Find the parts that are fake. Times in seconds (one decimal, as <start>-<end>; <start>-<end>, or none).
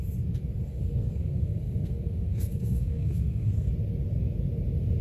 0.7-3.7